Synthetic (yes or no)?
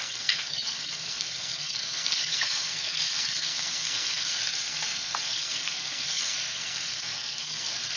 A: yes